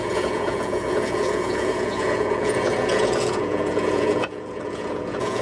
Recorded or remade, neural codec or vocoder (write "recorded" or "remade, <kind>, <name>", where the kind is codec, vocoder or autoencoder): remade, vocoder, Vocos